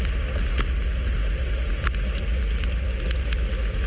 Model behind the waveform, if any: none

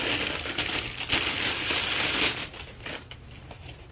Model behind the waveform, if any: none